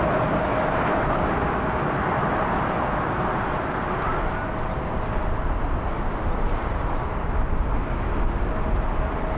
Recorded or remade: recorded